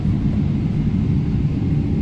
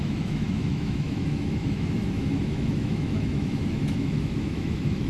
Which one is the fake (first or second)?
second